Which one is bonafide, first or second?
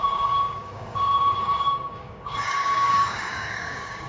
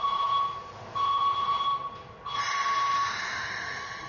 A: second